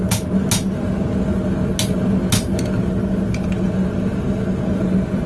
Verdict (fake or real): real